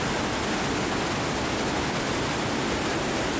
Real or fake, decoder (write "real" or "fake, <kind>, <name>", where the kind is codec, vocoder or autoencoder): real